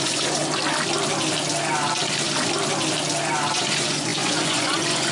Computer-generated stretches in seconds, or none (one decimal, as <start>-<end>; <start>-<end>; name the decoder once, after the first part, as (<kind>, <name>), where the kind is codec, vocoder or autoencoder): 0.0-0.4 (vocoder, Vocos); 3.5-5.1